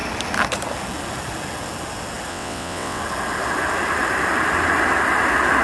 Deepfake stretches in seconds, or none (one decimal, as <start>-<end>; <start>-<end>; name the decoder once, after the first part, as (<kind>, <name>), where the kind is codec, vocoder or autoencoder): 2.3-3.0 (vocoder, WaveNeXt)